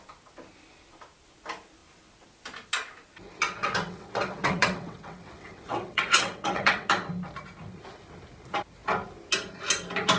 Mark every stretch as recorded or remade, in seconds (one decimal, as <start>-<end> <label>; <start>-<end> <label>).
0.0-3.6 recorded; 3.6-6.9 remade; 6.9-10.2 recorded